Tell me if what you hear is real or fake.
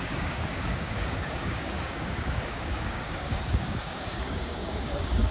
fake